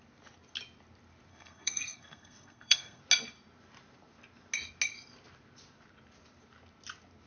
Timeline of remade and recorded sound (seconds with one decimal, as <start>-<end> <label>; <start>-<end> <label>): 0.0-1.3 recorded; 1.3-3.0 remade; 3.0-7.3 recorded